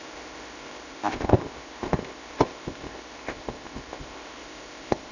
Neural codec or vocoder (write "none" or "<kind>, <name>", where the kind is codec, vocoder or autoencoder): codec, ZipCodec